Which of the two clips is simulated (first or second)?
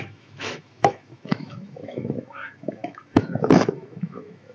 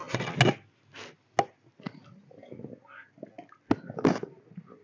first